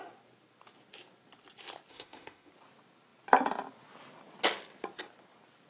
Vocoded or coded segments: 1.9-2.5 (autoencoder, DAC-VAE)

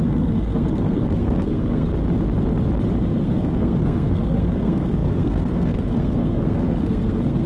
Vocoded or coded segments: 0.0-1.9 (codec, SNAC); 3.2-7.5

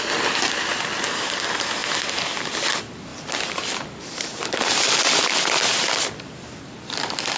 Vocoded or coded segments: 3.1-7.4 (vocoder, BigVGAN v2)

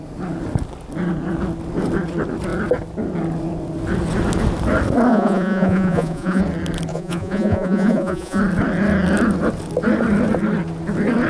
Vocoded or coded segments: 5.1-6.4 (vocoder, Vocos); 6.9-8.4

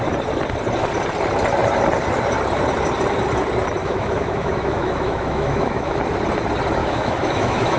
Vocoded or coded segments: 3.8-6.0 (autoencoder, DAC-VAE); 6.8-7.8

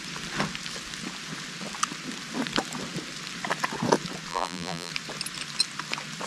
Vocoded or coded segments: 4.3-4.9 (vocoder, BigVGAN v2)

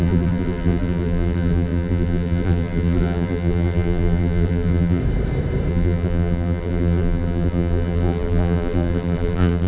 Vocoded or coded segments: 0.0-5.0 (vocoder, BigVGAN v2); 5.7-9.7

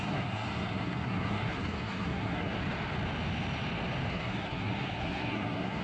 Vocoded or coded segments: 0.0-2.6 (codec, SNAC); 4.1-5.8